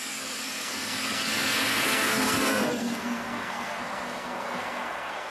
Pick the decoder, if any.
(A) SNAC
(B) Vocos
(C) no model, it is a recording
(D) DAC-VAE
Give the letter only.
A